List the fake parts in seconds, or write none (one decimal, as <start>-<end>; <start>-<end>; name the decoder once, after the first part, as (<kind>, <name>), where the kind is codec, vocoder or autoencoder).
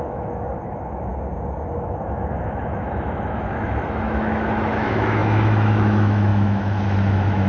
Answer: 0.0-1.1 (autoencoder, DAC-VAE); 1.8-7.5